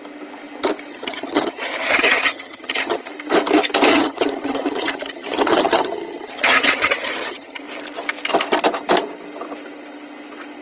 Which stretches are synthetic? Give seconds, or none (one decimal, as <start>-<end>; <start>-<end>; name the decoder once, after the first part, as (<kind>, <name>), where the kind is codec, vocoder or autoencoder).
0.9-3.1 (vocoder, HiFi-GAN); 3.9-7.6